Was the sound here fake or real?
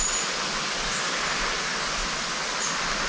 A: real